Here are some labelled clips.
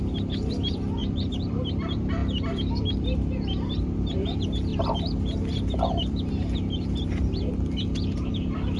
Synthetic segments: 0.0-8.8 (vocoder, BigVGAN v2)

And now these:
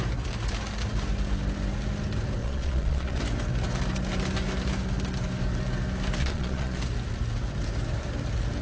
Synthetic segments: 2.4-3.2 (vocoder, Vocos); 6.2-6.8

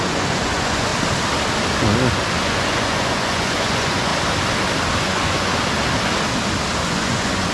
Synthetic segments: 0.0-0.9 (vocoder, Vocos); 2.4-4.1; 5.0-5.5; 6.8-7.5

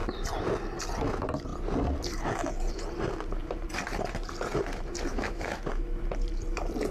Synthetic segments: 5.1-5.6 (autoencoder, DAC-VAE)